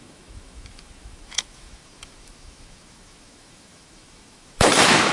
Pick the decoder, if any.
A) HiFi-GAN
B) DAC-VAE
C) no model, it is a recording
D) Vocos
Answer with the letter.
B